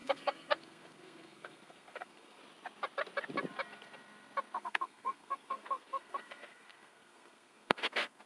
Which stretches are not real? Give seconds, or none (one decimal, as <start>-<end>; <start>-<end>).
0.0-2.4; 4.6-8.3